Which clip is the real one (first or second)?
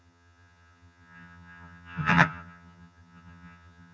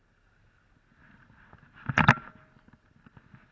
second